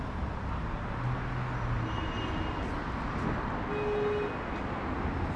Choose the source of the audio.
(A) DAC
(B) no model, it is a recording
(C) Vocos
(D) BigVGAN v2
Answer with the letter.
B